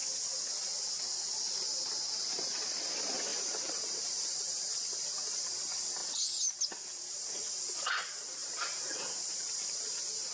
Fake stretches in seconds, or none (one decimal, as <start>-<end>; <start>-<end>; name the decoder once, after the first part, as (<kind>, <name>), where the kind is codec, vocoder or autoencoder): 3.3-5.5 (vocoder, BigVGAN v2); 8.4-9.9